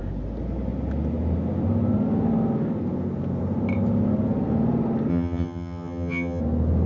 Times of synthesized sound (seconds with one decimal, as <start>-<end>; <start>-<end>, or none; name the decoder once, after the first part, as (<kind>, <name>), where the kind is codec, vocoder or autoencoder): 5.1-6.4 (vocoder, HiFi-GAN)